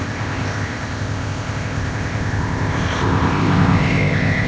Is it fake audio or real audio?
fake